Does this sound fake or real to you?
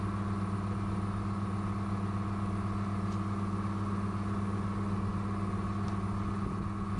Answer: real